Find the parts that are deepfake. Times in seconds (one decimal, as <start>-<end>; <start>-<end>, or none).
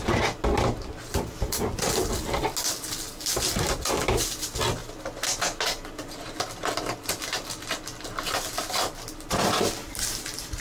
3.3-4.0